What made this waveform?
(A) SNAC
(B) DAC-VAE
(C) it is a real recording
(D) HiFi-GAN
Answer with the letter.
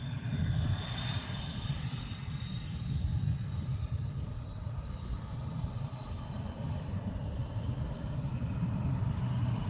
C